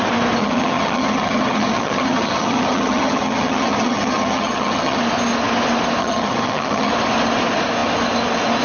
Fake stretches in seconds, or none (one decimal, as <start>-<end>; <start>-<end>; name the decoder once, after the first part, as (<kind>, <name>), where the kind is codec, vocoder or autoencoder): 0.4-5.0 (vocoder, HiFi-GAN); 6.0-6.9